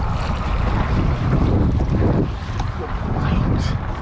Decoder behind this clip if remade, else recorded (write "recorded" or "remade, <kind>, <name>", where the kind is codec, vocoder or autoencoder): recorded